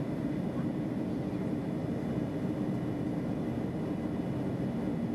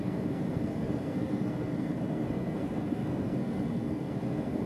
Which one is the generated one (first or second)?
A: second